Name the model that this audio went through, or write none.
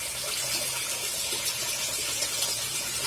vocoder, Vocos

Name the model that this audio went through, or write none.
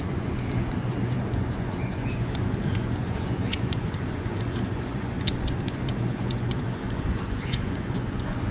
vocoder, Vocos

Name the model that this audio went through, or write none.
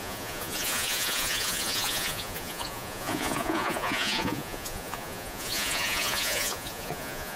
vocoder, Vocos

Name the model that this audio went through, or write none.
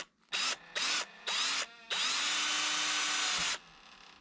none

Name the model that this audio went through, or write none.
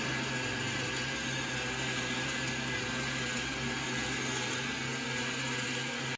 none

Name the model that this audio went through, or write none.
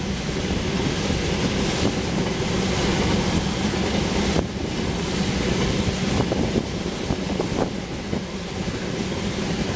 none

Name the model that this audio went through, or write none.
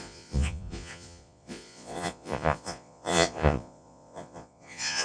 vocoder, Vocos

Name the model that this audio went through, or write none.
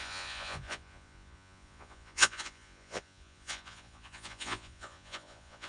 vocoder, Vocos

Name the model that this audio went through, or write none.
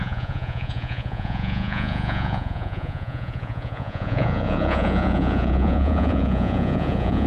vocoder, Vocos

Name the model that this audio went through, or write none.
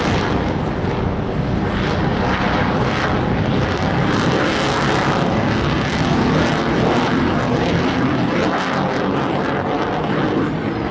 none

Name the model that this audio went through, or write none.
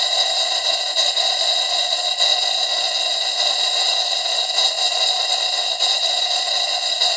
none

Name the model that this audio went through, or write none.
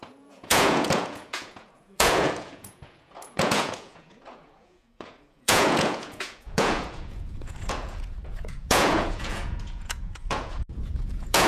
vocoder, Vocos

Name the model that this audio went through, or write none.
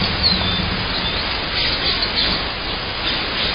none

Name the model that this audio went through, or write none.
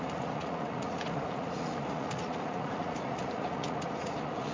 vocoder, Vocos